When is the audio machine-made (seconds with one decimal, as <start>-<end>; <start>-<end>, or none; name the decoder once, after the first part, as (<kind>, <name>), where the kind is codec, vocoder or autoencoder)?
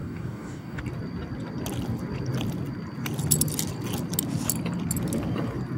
0.0-0.8 (codec, DAC)